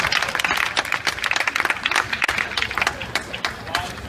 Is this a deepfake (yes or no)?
no